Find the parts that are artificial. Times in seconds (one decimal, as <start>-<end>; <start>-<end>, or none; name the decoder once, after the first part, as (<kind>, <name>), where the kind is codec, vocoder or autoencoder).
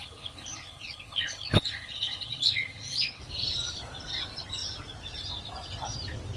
0.0-3.2 (codec, HILCodec)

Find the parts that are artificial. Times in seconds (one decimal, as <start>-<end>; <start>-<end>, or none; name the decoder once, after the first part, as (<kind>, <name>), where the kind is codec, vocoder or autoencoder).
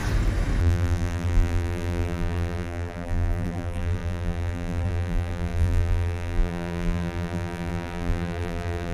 0.6-8.9 (vocoder, BigVGAN v2)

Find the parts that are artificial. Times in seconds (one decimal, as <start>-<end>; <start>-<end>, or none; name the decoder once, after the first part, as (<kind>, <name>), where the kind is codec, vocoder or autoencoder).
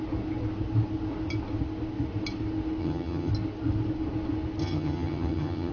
2.8-3.3 (vocoder, HiFi-GAN); 4.6-5.7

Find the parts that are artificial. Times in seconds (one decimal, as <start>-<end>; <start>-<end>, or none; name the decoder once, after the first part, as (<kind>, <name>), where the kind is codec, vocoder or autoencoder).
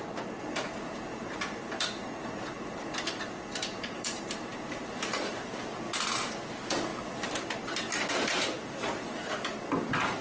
1.1-5.5 (vocoder, BigVGAN v2)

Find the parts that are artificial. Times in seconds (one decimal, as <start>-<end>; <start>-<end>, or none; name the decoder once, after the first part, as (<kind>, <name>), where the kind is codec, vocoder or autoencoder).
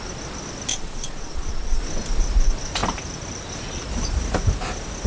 0.7-1.8 (vocoder, Vocos)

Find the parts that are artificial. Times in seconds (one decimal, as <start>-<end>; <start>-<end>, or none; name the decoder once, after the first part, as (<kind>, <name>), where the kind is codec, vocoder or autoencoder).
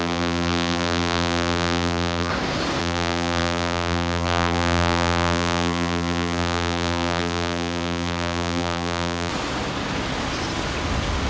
0.0-2.3 (vocoder, BigVGAN v2); 2.8-9.3